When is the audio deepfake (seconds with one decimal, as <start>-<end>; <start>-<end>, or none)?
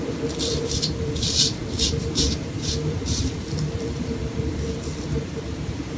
0.0-6.0